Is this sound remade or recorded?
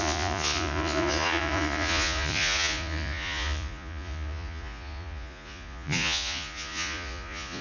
remade